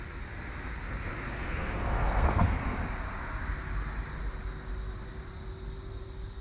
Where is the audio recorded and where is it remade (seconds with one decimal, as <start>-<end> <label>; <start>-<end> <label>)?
0.0-0.7 recorded; 0.7-2.4 remade; 2.4-6.4 recorded